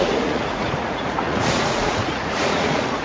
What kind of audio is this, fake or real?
fake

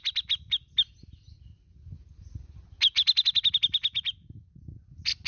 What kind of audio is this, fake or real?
real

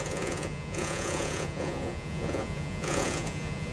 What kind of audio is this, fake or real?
fake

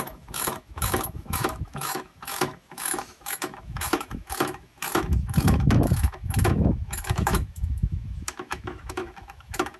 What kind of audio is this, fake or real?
fake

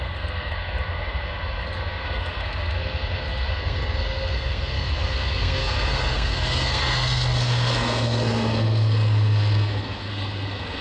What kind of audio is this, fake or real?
fake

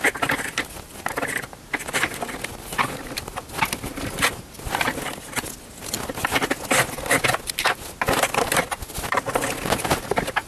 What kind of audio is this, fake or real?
real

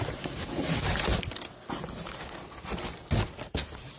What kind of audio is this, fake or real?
real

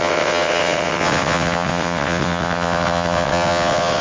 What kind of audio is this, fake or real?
fake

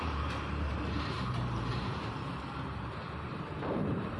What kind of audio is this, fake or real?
fake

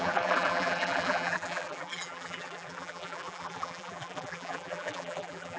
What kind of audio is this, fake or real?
fake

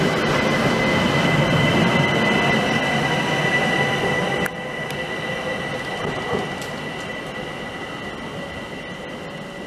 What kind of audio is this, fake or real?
real